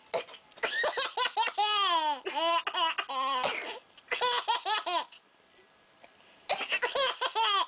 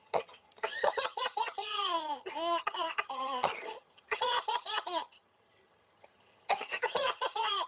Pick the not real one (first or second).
second